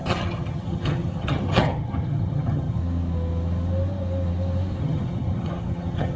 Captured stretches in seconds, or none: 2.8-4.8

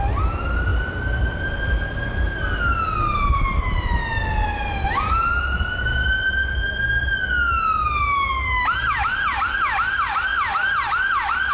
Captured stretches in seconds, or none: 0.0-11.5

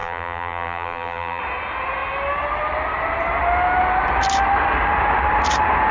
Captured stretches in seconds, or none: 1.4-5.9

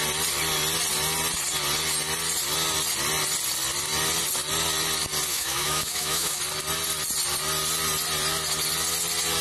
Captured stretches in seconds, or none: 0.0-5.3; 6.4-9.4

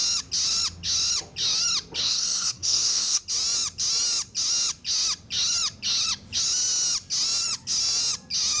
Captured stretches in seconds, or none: 0.0-2.0; 3.2-8.6

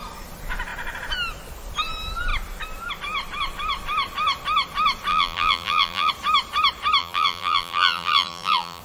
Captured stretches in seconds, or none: 0.0-5.1; 6.1-7.0

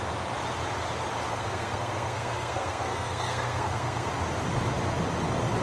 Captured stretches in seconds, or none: 0.0-1.3; 4.1-5.6